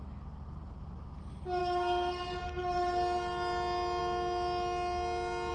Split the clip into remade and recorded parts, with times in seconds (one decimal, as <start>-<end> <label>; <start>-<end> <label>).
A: 0.0-1.6 recorded; 1.6-2.2 remade; 2.2-5.5 recorded